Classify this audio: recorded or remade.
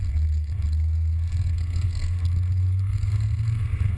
remade